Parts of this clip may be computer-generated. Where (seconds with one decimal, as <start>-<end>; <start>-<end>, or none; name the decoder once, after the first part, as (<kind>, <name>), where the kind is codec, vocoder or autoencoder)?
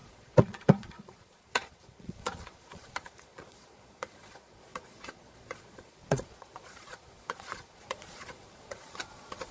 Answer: 0.0-9.5 (vocoder, Vocos)